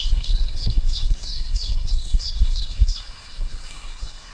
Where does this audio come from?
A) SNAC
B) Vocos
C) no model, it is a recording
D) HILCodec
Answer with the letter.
A